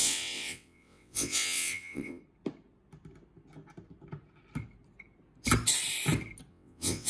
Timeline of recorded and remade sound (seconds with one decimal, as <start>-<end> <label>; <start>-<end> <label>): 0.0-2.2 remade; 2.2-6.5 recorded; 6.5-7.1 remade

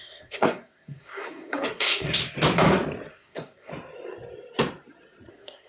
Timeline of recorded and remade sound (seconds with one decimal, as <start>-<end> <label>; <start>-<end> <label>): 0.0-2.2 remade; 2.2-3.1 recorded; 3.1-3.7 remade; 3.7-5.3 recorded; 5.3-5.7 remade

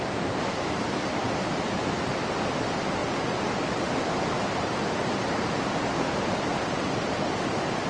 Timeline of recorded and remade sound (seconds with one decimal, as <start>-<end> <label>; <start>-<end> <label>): 0.0-1.2 recorded; 1.2-2.0 remade; 2.0-7.9 recorded

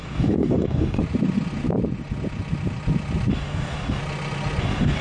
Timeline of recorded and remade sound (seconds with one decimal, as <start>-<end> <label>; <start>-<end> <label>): 0.0-1.0 remade; 1.0-3.3 recorded; 3.3-4.0 remade; 4.0-4.6 recorded; 4.6-5.0 remade